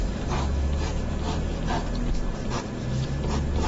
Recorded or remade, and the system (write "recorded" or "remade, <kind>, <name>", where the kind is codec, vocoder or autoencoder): recorded